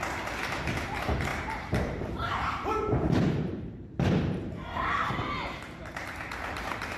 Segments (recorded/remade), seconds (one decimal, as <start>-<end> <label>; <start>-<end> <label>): 0.0-1.3 recorded; 1.3-5.1 remade; 5.1-7.0 recorded